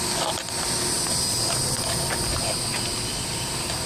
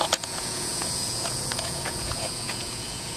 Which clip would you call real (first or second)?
first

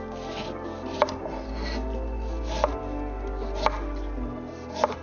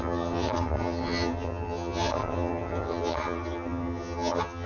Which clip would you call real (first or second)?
first